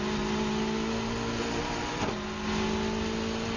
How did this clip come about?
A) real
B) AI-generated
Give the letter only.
A